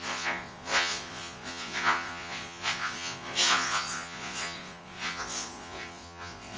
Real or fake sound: fake